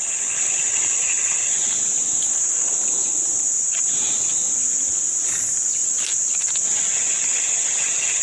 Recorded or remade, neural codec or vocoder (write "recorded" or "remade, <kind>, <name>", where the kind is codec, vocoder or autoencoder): recorded